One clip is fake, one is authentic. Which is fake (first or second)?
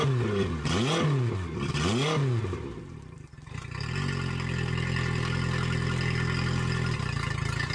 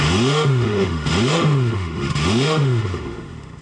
second